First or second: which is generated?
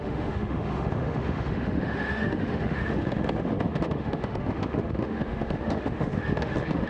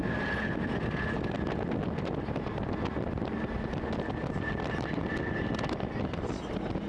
first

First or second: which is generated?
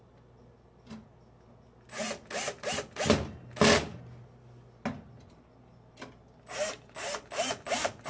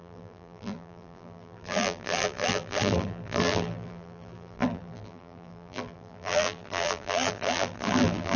second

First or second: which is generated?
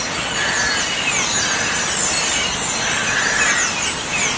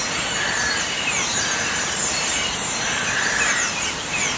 second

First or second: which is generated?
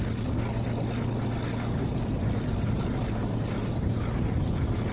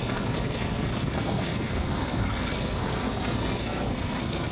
second